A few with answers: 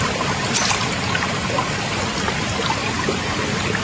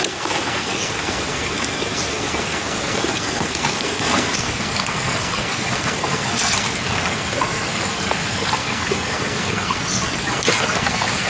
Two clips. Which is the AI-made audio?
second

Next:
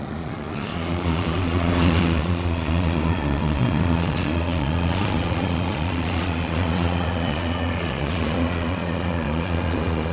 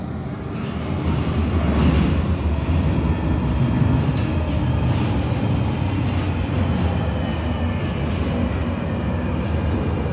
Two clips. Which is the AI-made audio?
first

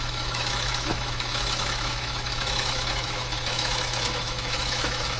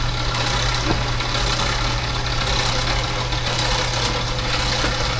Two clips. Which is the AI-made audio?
first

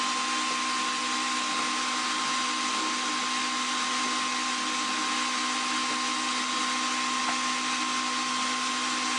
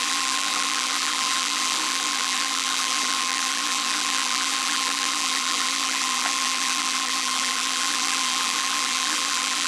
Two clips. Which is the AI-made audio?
second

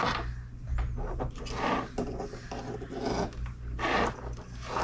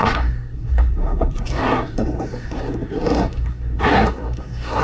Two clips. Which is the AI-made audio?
second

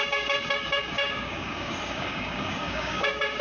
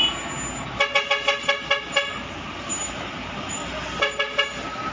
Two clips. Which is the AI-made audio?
first